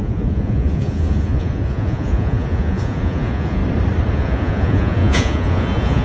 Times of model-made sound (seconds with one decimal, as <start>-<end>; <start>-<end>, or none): 0.0-3.6; 4.1-6.0